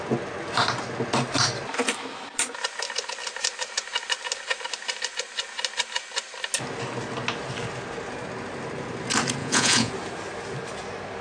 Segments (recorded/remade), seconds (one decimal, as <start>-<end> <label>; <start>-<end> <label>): 0.0-9.4 recorded; 9.4-9.9 remade; 9.9-11.2 recorded